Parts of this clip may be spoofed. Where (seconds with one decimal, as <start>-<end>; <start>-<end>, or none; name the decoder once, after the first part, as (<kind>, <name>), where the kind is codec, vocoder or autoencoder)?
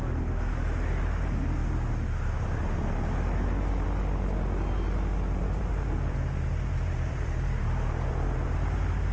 5.4-9.1 (vocoder, BigVGAN v2)